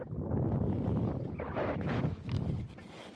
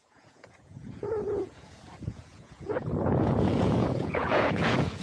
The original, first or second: first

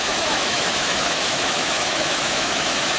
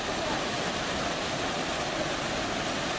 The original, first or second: second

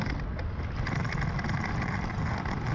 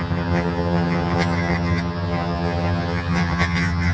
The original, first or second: first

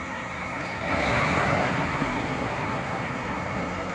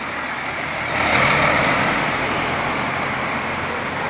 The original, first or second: second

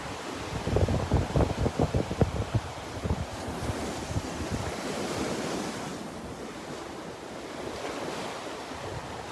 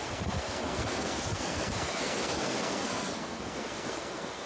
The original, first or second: first